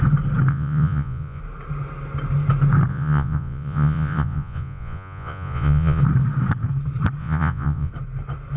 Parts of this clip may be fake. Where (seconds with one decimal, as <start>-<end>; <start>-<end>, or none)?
0.5-1.4; 2.9-6.0; 7.2-7.9